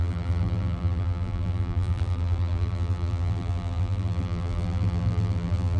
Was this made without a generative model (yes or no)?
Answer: no